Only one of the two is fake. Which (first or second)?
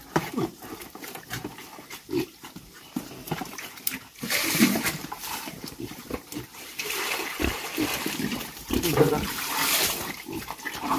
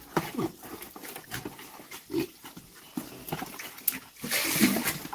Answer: first